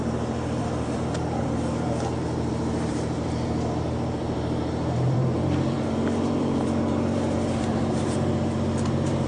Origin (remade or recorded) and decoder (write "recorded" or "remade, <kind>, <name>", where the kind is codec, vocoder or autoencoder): remade, vocoder, BigVGAN v2